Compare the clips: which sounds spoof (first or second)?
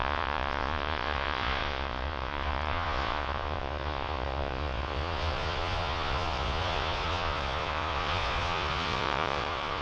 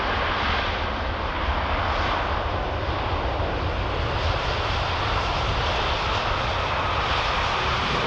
first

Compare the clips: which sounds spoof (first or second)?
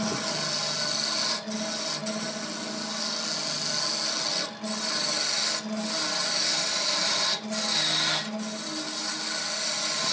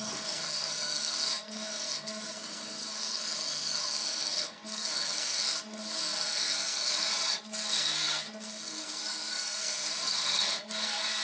second